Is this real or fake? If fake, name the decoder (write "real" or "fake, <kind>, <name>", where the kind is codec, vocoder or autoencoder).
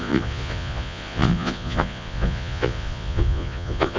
fake, vocoder, Vocos